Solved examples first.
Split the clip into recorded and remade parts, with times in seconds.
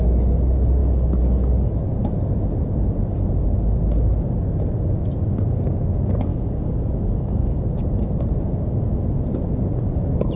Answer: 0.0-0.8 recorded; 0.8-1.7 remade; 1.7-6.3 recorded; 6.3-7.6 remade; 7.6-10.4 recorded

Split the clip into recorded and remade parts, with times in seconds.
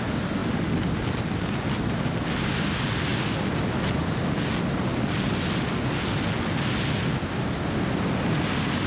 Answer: 0.0-8.9 recorded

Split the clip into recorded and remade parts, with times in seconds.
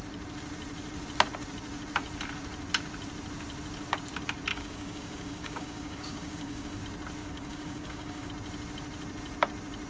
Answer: 0.0-4.5 recorded; 4.5-6.8 remade; 6.8-7.2 recorded; 7.2-8.3 remade; 8.3-9.9 recorded